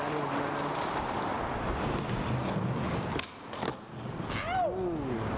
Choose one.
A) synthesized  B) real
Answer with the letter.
B